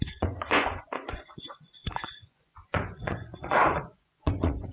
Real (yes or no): no